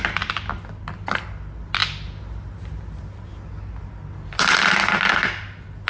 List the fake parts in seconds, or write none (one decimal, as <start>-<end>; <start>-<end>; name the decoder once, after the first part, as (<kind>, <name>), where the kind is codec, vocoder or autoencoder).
none